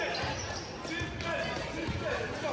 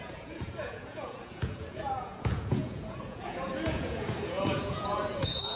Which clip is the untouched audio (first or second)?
first